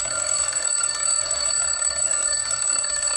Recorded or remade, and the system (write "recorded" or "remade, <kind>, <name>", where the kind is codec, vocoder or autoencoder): remade, codec, SNAC